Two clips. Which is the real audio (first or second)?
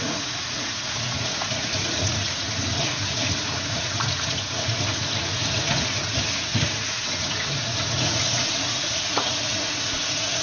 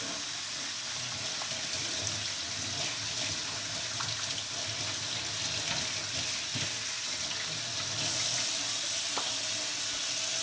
second